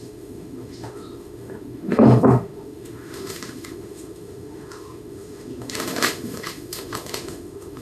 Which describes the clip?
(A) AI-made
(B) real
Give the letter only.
A